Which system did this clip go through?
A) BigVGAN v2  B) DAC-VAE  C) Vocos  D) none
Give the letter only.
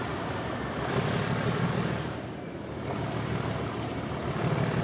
D